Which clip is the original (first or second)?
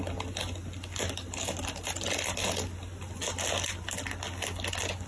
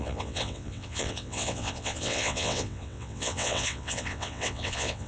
first